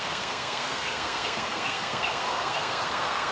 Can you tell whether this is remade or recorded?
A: remade